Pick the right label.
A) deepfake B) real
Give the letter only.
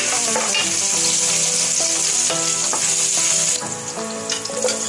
B